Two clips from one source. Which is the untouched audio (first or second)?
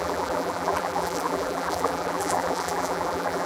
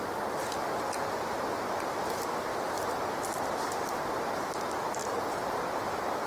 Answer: second